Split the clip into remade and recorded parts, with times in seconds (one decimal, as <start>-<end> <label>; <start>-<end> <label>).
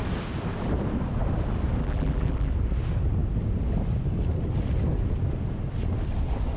0.0-1.8 recorded; 1.8-2.5 remade; 2.5-6.6 recorded